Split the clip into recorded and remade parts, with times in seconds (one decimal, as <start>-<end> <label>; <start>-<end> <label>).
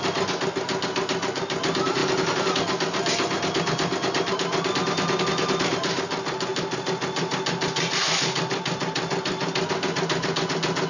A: 0.0-10.9 recorded